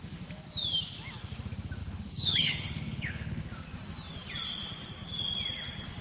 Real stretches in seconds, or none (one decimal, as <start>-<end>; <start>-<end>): 0.0-1.8; 3.4-6.0